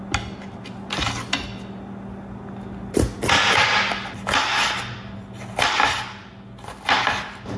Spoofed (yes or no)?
no